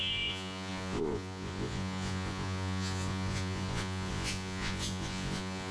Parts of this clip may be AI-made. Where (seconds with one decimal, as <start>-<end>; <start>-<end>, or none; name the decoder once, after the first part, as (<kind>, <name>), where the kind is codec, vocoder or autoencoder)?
0.0-5.7 (vocoder, Vocos)